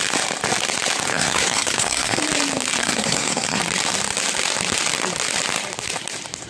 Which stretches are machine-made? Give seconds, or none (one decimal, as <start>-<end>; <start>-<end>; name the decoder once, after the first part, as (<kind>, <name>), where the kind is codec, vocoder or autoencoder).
1.1-2.2 (codec, SNAC); 2.8-3.6